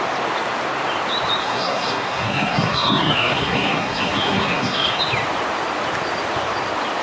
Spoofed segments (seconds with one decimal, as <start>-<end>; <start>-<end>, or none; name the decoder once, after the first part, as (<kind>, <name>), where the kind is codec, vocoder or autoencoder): 1.4-5.0 (codec, SNAC)